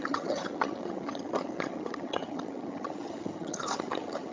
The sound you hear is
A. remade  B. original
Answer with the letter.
A